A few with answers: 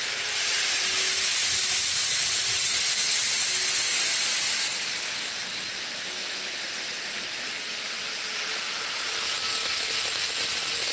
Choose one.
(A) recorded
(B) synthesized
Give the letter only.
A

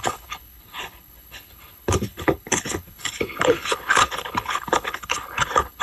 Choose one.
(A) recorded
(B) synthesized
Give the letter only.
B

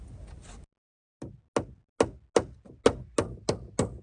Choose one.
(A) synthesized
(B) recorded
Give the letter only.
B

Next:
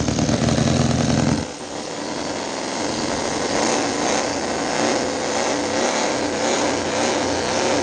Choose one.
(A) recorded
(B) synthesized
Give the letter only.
A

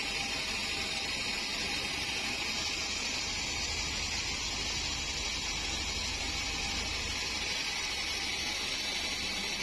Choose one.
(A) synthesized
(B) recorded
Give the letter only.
B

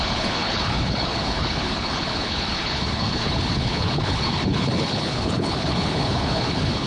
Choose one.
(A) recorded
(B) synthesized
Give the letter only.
B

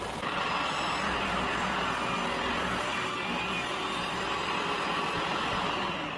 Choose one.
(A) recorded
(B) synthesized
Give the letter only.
A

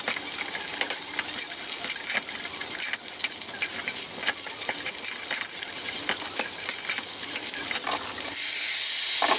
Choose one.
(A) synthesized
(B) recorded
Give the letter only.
B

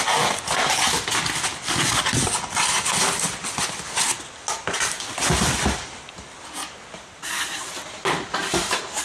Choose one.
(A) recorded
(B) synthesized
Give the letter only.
A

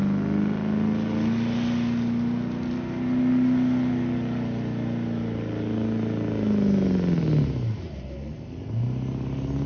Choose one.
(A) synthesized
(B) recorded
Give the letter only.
B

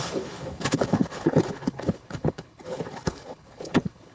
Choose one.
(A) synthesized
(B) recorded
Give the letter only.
A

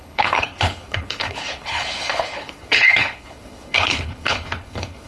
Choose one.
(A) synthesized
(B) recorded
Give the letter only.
A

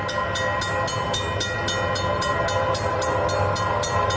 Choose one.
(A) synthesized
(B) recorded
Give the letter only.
B